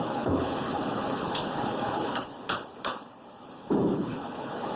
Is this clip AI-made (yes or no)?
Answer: yes